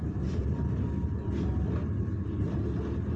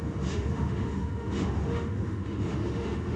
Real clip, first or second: first